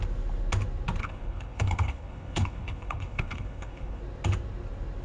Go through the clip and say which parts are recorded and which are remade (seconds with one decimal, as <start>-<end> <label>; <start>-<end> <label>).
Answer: 0.0-1.0 recorded; 1.0-4.0 remade; 4.0-5.0 recorded